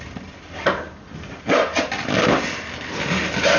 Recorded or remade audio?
recorded